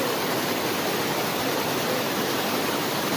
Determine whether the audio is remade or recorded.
recorded